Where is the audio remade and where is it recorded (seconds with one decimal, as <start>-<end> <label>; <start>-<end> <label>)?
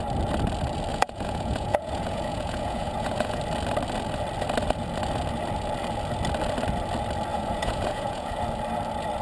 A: 0.0-0.9 recorded; 0.9-3.4 remade; 3.4-7.3 recorded; 7.3-8.4 remade; 8.4-9.2 recorded